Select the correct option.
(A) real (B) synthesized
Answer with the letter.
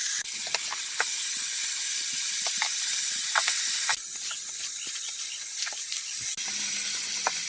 A